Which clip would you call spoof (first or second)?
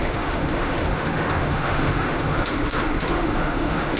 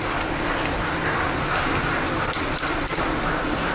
first